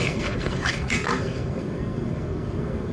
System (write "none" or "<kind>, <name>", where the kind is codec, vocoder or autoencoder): codec, SNAC